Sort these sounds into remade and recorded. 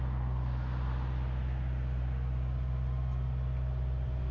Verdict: recorded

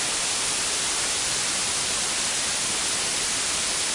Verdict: recorded